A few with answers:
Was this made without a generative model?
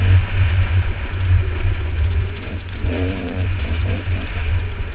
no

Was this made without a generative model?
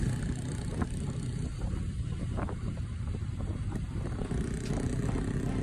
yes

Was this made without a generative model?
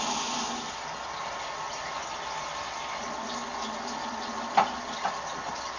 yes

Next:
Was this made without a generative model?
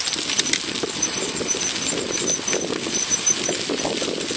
yes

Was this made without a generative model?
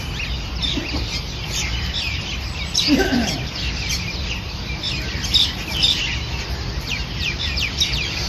yes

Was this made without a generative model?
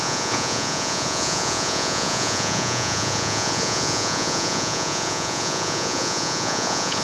no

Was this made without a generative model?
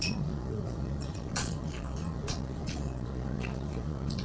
no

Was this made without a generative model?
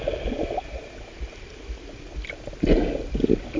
yes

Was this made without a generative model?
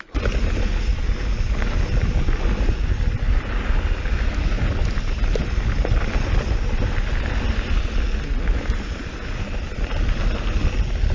yes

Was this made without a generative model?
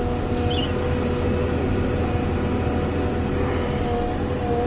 yes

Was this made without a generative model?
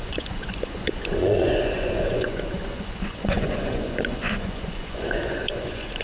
no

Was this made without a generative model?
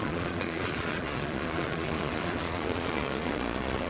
no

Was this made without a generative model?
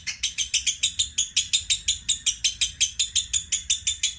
yes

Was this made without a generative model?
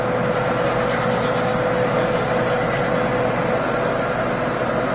yes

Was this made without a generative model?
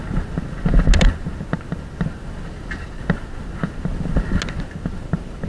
yes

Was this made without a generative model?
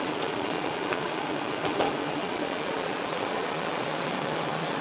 no